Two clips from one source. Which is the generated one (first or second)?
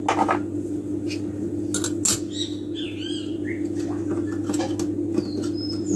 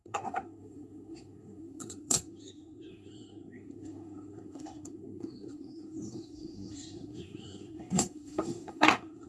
second